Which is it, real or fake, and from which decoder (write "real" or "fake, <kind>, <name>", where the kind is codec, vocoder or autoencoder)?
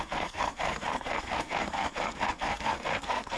fake, codec, SNAC